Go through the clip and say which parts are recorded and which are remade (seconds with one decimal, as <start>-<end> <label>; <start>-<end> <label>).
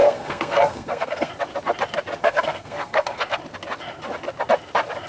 0.0-1.3 remade; 1.3-2.2 recorded; 2.2-3.2 remade; 3.2-5.1 recorded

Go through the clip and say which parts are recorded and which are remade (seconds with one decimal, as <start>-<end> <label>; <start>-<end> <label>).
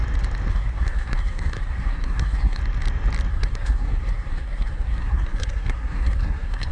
0.0-0.5 recorded; 0.5-2.6 remade; 2.6-3.3 recorded; 3.3-6.7 remade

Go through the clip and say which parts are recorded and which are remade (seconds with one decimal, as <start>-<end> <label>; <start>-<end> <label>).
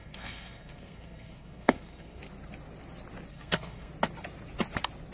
0.0-2.2 remade; 2.2-3.3 recorded; 3.3-3.9 remade; 3.9-5.1 recorded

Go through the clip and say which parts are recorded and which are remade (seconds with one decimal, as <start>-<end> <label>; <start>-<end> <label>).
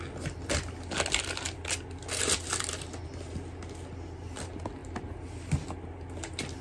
0.0-6.6 recorded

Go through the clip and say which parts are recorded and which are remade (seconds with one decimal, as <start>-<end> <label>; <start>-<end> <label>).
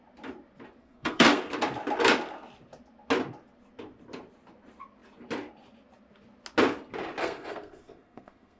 0.0-0.8 recorded; 0.8-1.4 remade; 1.4-7.2 recorded; 7.2-8.6 remade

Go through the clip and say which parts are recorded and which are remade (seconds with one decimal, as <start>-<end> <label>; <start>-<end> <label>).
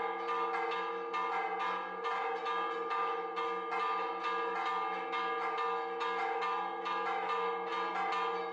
0.0-8.5 recorded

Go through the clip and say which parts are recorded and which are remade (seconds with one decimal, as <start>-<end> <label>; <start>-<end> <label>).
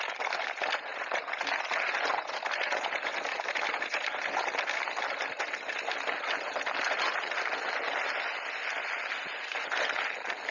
0.0-10.5 recorded